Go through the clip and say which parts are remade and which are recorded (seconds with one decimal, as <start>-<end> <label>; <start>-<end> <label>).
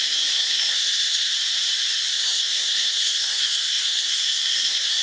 0.0-1.3 remade; 1.3-2.1 recorded; 2.1-5.0 remade